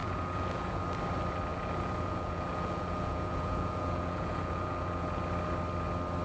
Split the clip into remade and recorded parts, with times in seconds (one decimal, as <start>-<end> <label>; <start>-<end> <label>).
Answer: 0.0-0.8 remade; 0.8-1.5 recorded; 1.5-5.2 remade; 5.2-6.2 recorded